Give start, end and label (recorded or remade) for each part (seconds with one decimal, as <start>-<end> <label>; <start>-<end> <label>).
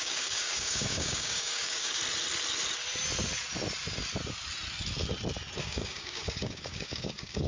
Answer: 0.0-2.0 remade; 2.0-5.6 recorded; 5.6-7.5 remade